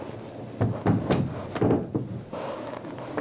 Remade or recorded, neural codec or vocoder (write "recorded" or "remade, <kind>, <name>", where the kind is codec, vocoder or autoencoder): recorded